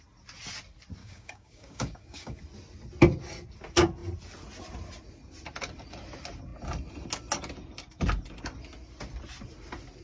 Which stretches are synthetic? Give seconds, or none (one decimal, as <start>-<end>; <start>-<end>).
1.0-2.4